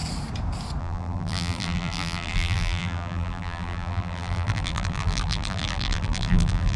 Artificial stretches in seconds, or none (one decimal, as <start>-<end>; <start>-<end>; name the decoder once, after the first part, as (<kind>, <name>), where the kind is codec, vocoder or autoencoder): 0.8-6.8 (vocoder, BigVGAN v2)